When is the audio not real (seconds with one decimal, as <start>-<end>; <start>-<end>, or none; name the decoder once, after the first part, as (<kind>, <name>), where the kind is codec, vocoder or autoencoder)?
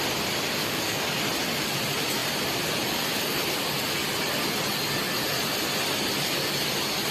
0.6-1.2 (codec, DAC)